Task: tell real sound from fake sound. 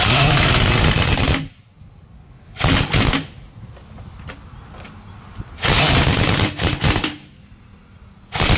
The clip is real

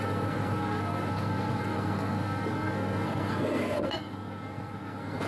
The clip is fake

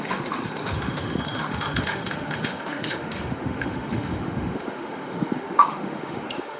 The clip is fake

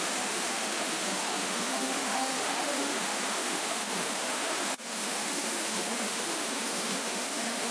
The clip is fake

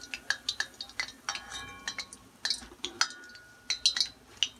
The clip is real